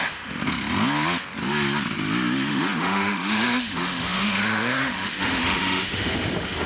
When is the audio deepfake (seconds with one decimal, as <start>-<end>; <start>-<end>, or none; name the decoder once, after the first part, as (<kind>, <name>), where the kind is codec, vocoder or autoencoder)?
0.0-0.4 (autoencoder, DAC-VAE); 2.5-6.7